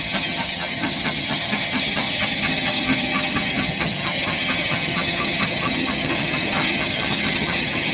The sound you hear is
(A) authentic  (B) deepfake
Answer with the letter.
B